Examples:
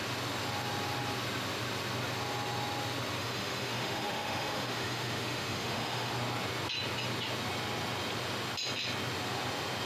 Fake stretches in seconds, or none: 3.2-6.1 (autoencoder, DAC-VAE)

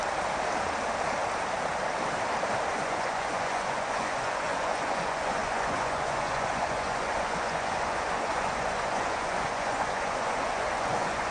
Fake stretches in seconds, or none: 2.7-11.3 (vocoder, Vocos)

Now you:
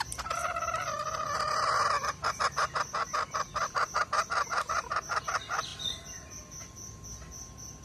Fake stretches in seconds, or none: 0.4-5.1 (vocoder, BigVGAN v2); 5.7-6.4